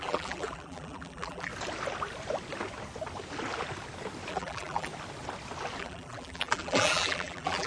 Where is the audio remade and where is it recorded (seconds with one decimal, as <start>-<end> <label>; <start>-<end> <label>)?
0.0-1.5 remade; 1.5-4.3 recorded; 4.3-4.9 remade; 4.9-5.8 recorded; 5.8-7.7 remade